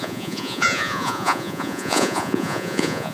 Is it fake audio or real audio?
fake